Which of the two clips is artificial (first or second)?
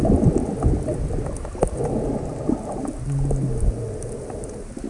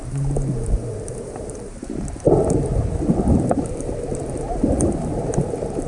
second